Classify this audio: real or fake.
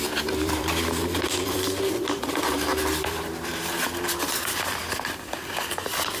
fake